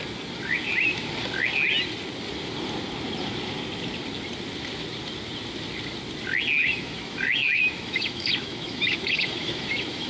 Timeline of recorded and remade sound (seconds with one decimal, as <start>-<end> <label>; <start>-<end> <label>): 0.0-6.6 recorded; 6.6-10.1 remade